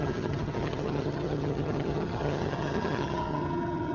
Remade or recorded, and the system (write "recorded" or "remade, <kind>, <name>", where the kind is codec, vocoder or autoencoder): remade, vocoder, HiFi-GAN